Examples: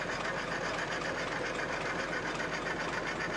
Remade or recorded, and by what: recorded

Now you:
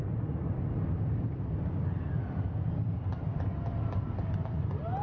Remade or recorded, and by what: recorded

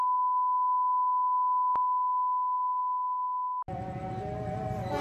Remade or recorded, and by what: recorded